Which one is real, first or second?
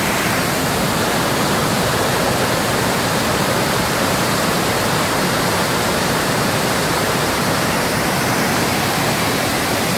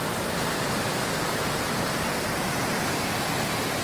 second